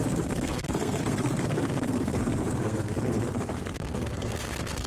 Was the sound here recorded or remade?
remade